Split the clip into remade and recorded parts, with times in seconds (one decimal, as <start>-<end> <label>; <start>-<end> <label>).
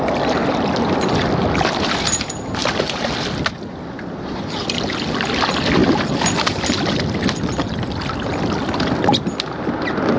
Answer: 0.0-10.2 recorded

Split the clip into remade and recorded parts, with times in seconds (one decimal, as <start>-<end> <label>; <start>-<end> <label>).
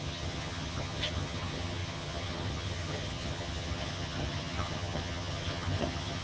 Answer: 0.0-6.2 remade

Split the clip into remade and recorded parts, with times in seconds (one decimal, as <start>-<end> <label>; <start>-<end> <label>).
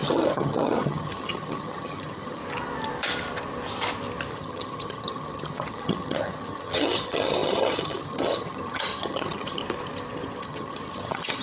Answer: 0.0-2.4 remade; 2.4-4.3 recorded; 4.3-9.6 remade; 9.6-10.4 recorded; 10.4-11.4 remade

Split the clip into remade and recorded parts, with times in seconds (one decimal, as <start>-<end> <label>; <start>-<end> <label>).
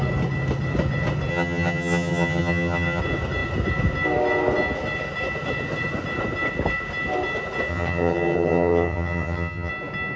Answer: 0.0-1.3 recorded; 1.3-3.0 remade; 3.0-7.7 recorded; 7.7-9.7 remade; 9.7-10.2 recorded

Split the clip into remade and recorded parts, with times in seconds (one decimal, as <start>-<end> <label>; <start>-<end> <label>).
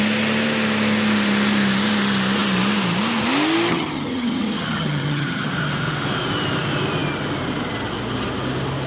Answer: 0.0-3.7 recorded; 3.7-5.5 remade; 5.5-8.9 recorded